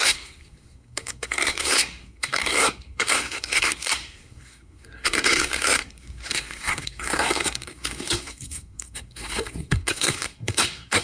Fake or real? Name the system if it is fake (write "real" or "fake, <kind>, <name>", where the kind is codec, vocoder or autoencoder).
fake, codec, SNAC